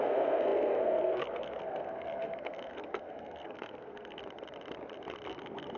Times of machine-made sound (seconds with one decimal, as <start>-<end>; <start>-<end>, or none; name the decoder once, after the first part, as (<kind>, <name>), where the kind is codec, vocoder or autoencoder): 0.0-4.2 (codec, SNAC); 5.3-5.8